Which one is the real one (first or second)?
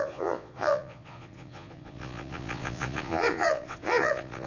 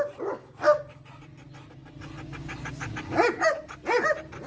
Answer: second